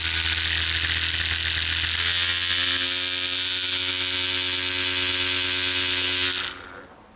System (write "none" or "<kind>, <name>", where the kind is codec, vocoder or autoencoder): none